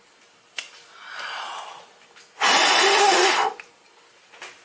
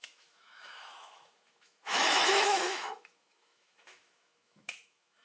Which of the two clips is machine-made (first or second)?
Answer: second